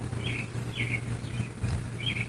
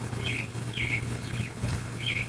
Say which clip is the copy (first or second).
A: second